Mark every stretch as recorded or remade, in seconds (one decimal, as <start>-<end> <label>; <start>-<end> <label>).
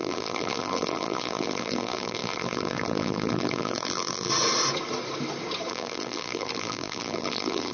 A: 0.0-4.3 remade; 4.3-5.7 recorded; 5.7-7.7 remade